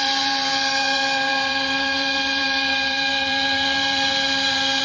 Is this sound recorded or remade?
remade